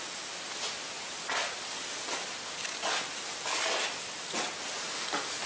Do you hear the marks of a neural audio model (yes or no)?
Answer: no